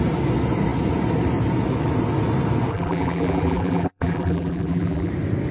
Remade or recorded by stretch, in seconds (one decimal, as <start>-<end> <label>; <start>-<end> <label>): 0.0-2.7 recorded; 2.7-5.1 remade; 5.1-5.5 recorded